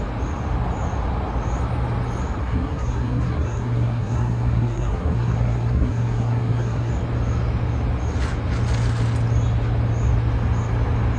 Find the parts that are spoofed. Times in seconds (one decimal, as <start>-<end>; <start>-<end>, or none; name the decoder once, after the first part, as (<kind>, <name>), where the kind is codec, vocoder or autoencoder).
2.4-6.9 (codec, SNAC)